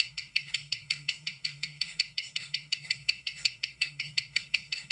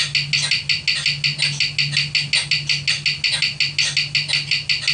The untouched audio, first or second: second